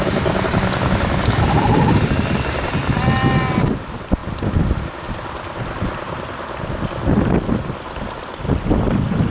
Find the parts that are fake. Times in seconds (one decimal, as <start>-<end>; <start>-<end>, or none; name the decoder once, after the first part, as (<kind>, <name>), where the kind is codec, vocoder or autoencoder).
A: none